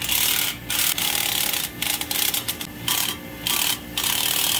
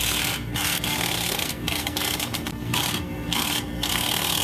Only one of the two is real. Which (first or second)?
first